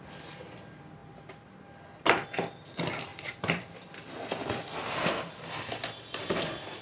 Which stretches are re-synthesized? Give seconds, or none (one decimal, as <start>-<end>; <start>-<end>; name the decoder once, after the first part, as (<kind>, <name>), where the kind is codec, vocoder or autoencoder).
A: 1.0-1.5 (vocoder, BigVGAN v2); 3.1-3.9